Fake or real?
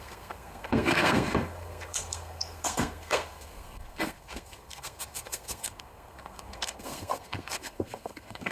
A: fake